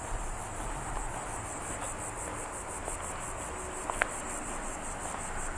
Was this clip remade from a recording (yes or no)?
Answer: no